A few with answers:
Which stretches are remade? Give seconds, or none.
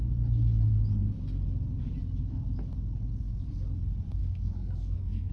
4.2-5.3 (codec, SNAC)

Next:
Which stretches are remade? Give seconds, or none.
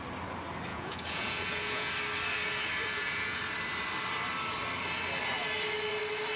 0.7-1.9 (vocoder, Vocos); 2.8-3.4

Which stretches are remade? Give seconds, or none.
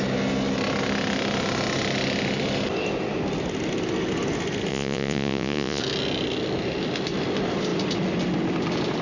4.7-5.8 (vocoder, Vocos)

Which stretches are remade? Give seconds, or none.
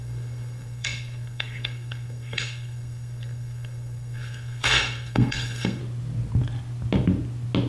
0.0-5.8 (codec, SNAC)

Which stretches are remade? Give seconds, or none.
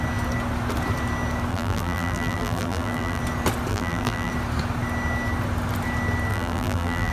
1.5-3.2 (vocoder, BigVGAN v2); 3.7-4.3; 6.3-7.1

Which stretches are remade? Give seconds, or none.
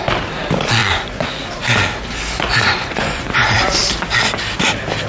0.8-1.4 (vocoder, Vocos); 2.5-3.8